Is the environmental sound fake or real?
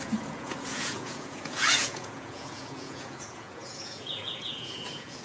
fake